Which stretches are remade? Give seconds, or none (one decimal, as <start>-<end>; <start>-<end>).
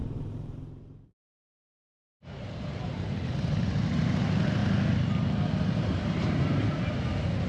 0.0-3.6